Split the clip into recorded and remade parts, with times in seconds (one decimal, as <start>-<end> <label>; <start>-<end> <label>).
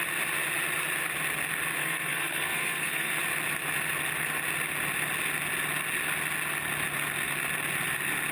0.0-1.8 recorded; 1.8-3.1 remade; 3.1-8.3 recorded